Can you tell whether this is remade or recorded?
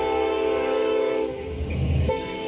remade